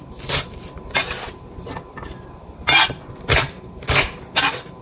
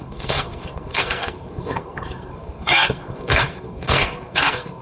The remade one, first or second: second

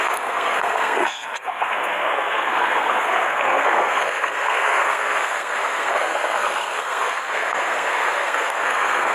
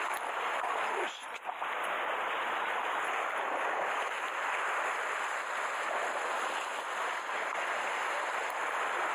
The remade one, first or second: first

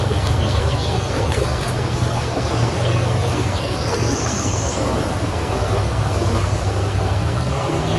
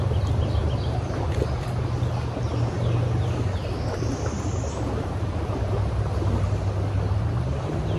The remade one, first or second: first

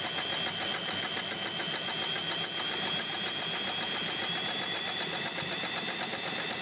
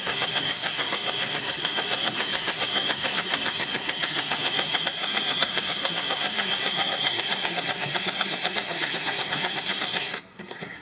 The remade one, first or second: second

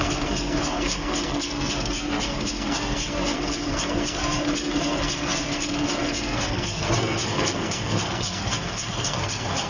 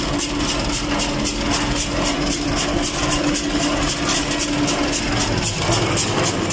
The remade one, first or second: first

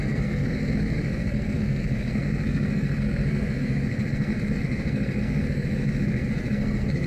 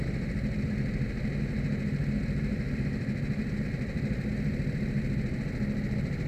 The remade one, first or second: first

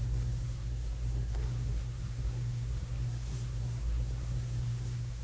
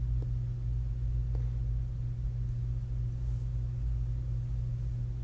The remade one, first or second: first